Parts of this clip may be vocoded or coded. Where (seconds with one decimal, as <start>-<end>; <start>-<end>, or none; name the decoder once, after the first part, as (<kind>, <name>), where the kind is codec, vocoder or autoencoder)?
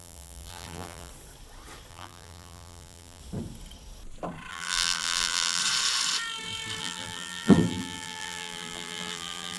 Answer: 0.0-1.1 (vocoder, BigVGAN v2); 1.9-3.2; 4.5-5.6; 6.8-9.6